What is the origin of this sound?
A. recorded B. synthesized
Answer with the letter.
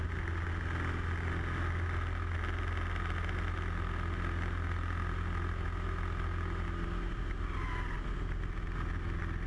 A